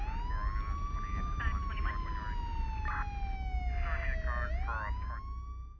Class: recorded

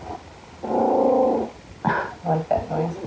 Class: recorded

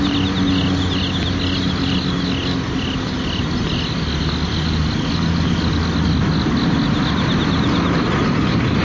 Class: recorded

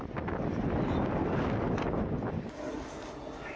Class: recorded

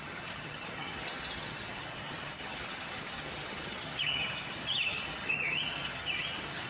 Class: remade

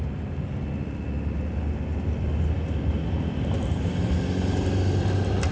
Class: recorded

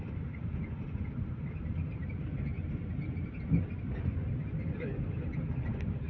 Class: recorded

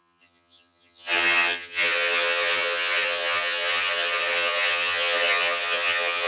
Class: remade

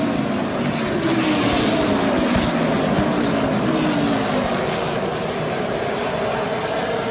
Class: recorded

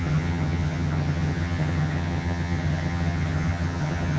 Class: remade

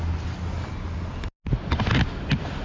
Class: recorded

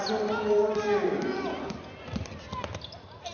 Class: recorded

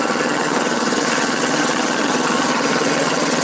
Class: remade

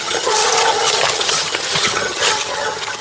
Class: remade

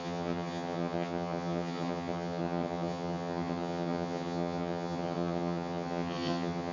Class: remade